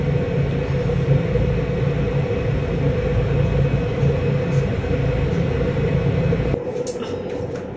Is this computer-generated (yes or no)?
no